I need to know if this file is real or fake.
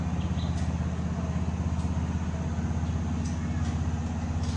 real